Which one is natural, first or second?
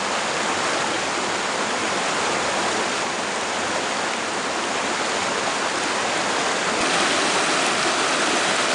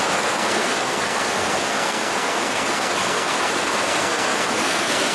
first